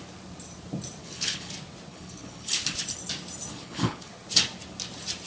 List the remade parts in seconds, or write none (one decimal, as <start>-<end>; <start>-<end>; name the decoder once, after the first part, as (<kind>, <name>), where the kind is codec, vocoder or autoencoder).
1.0-1.5 (codec, HILCodec); 1.9-2.6; 3.5-4.1